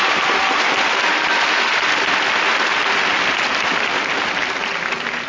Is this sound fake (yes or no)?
no